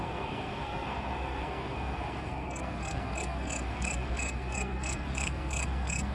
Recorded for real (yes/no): no